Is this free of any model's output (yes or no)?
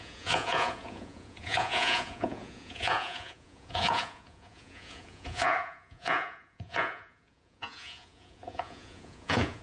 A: no